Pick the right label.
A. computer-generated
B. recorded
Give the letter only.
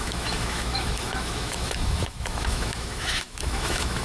A